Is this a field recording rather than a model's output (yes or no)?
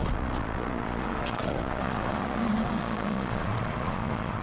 no